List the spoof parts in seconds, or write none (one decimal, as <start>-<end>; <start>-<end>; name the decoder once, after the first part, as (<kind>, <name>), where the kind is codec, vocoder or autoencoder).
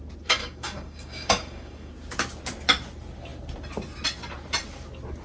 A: 0.4-1.9 (codec, DAC)